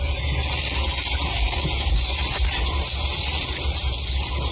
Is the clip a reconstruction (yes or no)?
no